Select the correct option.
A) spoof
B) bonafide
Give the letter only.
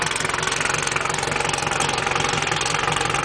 B